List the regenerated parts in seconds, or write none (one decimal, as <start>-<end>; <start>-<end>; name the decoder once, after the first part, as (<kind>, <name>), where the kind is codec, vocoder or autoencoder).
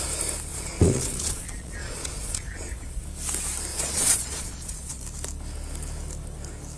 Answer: 0.5-3.0 (vocoder, Vocos); 3.7-5.0